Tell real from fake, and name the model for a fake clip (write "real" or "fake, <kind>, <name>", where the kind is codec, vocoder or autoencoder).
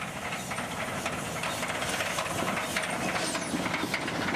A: real